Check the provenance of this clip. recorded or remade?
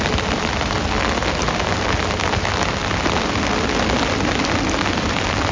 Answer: recorded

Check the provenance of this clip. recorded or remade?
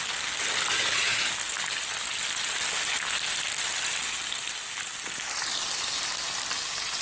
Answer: recorded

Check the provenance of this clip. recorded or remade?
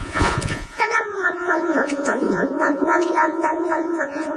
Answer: remade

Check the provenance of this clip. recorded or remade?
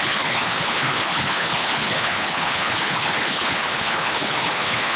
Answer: remade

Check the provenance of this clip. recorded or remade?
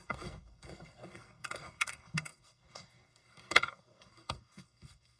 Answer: remade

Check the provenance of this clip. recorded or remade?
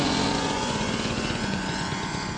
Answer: remade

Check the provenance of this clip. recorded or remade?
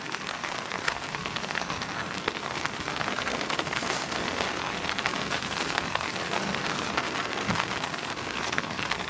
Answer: remade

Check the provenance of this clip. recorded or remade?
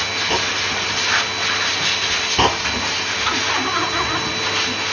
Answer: recorded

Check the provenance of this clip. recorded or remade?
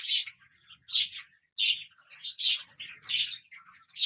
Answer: recorded